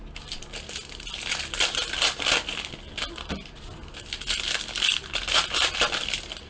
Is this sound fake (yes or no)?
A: no